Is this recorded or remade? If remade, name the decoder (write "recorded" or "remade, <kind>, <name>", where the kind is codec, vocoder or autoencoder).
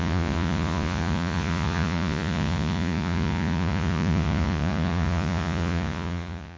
remade, vocoder, Vocos